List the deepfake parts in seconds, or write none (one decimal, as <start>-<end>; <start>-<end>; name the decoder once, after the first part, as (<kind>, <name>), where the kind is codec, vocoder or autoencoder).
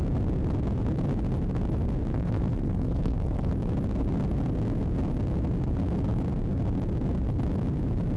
2.1-3.5 (codec, SNAC)